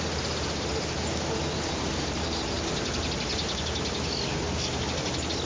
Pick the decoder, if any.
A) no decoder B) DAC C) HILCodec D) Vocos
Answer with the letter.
A